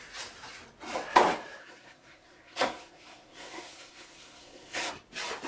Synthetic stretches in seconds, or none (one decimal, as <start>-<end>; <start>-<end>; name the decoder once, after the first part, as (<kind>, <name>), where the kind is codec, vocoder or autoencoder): 1.6-4.9 (codec, SNAC)